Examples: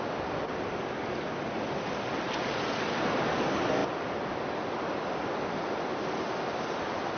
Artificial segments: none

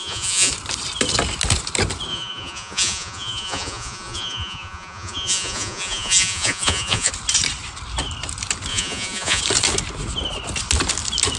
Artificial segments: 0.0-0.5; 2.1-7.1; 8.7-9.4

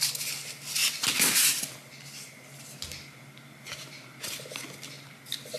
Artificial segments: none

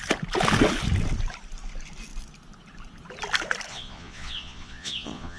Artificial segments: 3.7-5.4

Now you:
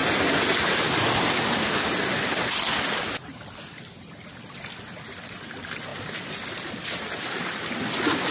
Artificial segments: none